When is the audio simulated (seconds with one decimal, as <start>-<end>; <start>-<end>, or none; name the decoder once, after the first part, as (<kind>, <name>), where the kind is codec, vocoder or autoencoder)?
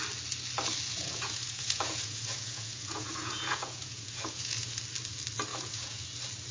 0.9-4.8 (vocoder, Vocos); 5.5-6.0